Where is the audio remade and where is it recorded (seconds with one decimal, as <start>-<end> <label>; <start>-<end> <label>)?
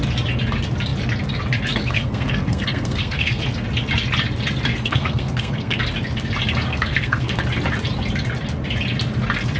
0.0-1.8 recorded; 1.8-3.4 remade; 3.4-4.7 recorded; 4.7-5.8 remade; 5.8-6.7 recorded; 6.7-7.4 remade; 7.4-9.6 recorded